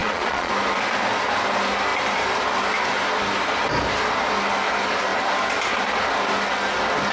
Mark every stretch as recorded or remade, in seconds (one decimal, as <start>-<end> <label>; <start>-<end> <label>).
0.0-0.5 remade; 0.5-7.1 recorded

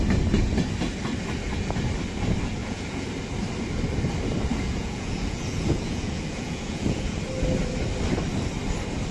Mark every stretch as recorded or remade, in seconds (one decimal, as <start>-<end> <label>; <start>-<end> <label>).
0.0-2.6 recorded; 2.6-3.1 remade; 3.1-4.5 recorded; 4.5-7.2 remade; 7.2-9.1 recorded

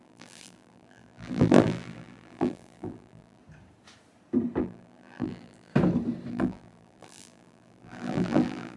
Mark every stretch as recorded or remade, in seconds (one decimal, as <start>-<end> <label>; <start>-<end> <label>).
0.0-3.4 remade; 3.4-4.6 recorded; 4.6-5.7 remade; 5.7-6.3 recorded; 6.3-8.8 remade

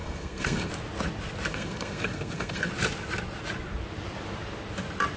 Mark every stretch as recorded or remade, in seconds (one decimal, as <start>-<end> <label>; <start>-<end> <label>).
0.0-0.7 remade; 0.7-1.5 recorded; 1.5-2.7 remade; 2.7-5.2 recorded

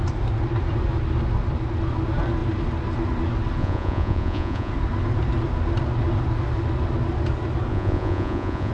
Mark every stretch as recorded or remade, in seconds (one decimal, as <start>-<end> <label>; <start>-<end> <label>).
0.0-3.6 recorded; 3.6-4.7 remade; 4.7-7.7 recorded; 7.7-8.7 remade

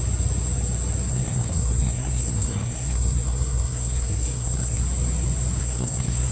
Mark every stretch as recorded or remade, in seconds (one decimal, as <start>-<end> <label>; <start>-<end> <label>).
0.0-1.1 recorded; 1.1-4.8 remade; 4.8-5.6 recorded; 5.6-6.3 remade